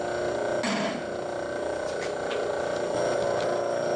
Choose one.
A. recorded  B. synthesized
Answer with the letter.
A